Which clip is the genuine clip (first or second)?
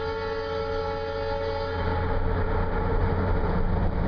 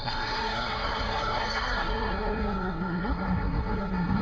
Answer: first